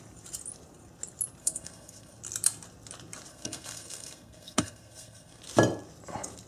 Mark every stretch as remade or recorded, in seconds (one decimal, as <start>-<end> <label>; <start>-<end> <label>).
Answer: 0.0-1.4 recorded; 1.4-2.2 remade; 2.2-3.3 recorded; 3.3-5.4 remade; 5.4-6.5 recorded